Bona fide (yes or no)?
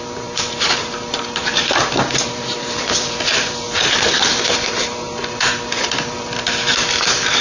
no